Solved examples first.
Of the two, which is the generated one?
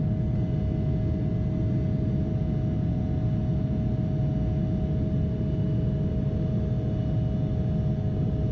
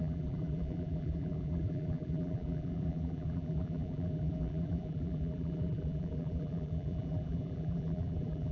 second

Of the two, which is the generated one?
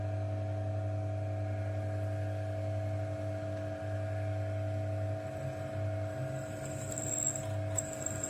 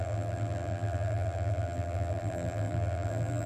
second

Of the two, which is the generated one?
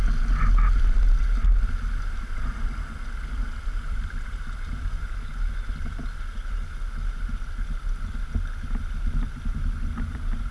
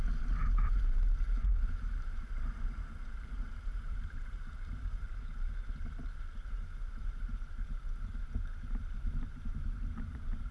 second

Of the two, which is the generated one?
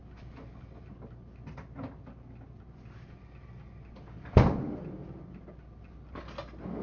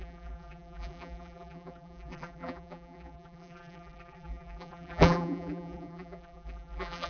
second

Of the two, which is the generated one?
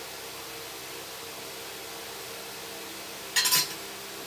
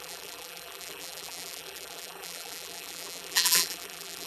second